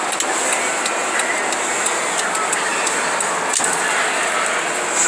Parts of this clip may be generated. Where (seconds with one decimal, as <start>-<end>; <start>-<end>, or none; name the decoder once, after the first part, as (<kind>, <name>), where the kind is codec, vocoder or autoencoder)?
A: none